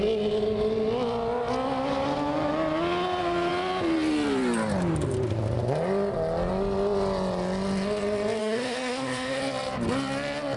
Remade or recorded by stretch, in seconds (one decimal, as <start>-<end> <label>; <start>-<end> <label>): 0.0-8.4 recorded; 8.4-9.4 remade; 9.4-10.6 recorded